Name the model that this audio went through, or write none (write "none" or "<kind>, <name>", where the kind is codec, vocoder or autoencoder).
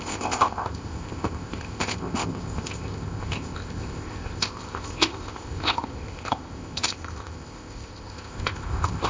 codec, ZipCodec